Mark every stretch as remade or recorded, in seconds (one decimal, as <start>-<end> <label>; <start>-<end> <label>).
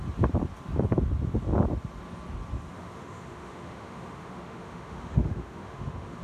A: 0.0-2.7 recorded; 2.7-6.2 remade